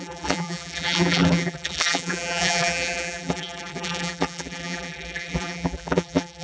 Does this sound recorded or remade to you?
remade